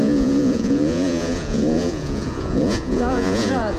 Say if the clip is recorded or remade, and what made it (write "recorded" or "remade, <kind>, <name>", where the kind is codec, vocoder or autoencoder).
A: remade, vocoder, Vocos